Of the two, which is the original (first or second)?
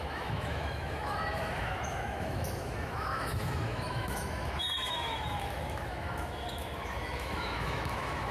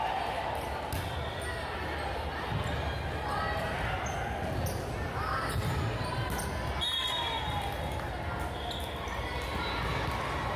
second